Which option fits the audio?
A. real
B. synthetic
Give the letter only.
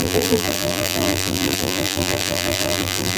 B